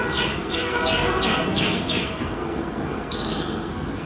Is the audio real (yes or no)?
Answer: no